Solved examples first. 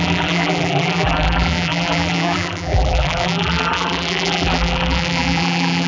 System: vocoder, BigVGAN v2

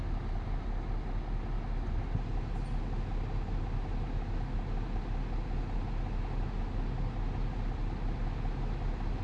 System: none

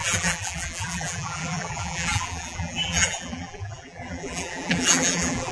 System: vocoder, BigVGAN v2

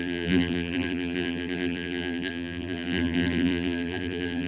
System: vocoder, BigVGAN v2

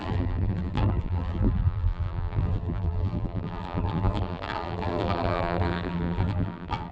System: vocoder, BigVGAN v2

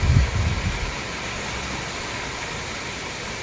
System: none